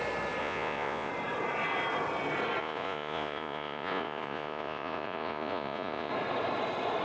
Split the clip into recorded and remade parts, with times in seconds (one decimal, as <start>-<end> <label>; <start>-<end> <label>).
0.0-0.4 recorded; 0.4-1.1 remade; 1.1-2.6 recorded; 2.6-6.1 remade; 6.1-7.0 recorded